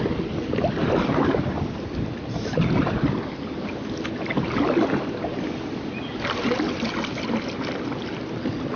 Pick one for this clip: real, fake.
real